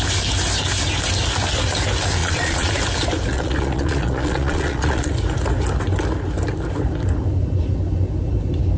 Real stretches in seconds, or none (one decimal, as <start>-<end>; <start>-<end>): 0.0-2.2; 2.7-3.3; 5.1-8.8